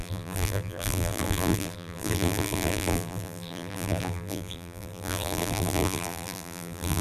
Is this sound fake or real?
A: fake